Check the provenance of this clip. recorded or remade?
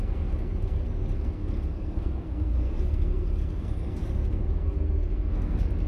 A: remade